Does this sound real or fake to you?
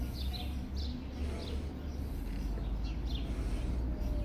real